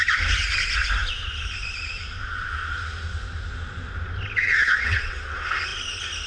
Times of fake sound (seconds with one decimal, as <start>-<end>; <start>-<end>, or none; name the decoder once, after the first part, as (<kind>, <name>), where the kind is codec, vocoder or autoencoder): 4.6-5.2 (vocoder, WaveNeXt)